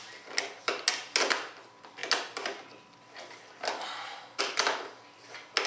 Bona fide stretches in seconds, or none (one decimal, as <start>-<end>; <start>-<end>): 0.0-5.7